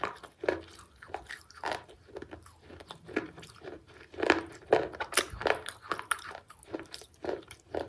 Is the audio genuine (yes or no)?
yes